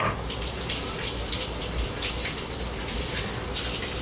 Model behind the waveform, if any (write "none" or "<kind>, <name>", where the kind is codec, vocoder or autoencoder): vocoder, BigVGAN v2